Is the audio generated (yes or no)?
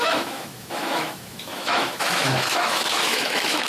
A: yes